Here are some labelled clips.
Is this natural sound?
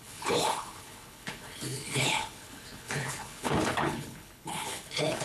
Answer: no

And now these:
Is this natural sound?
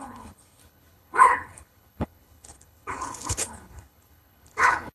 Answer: no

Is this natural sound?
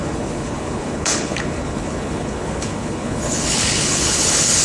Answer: no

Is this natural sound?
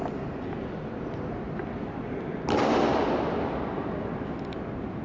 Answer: yes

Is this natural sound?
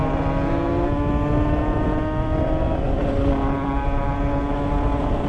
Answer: yes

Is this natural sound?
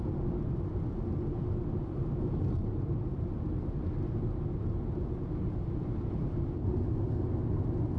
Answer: yes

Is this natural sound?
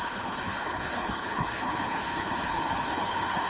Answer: no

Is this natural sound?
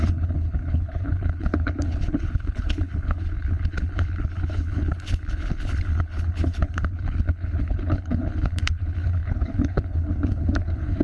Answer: no